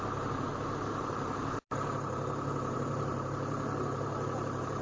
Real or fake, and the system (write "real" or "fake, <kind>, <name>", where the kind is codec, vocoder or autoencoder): fake, vocoder, BigVGAN v2